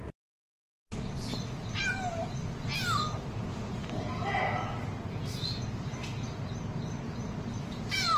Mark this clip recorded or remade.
recorded